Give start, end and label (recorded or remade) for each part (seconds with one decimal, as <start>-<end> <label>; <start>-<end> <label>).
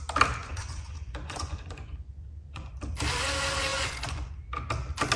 0.0-0.4 recorded; 0.4-2.7 remade; 2.7-3.7 recorded; 3.7-4.3 remade; 4.3-5.2 recorded